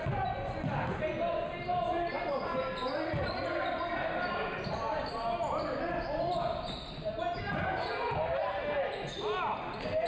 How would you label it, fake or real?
real